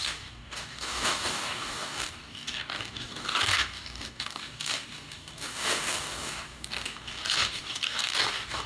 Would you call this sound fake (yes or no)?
yes